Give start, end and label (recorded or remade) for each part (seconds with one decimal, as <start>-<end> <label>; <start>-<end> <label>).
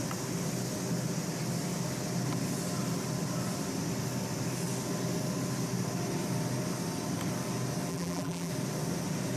0.0-7.9 recorded; 7.9-8.5 remade; 8.5-9.4 recorded